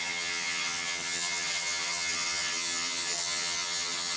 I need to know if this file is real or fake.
fake